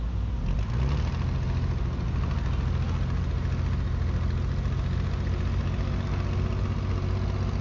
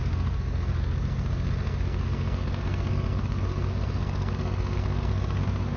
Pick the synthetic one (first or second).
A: second